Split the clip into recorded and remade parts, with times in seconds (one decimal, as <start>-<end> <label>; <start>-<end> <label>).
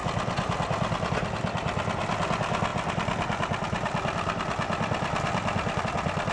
0.0-6.3 recorded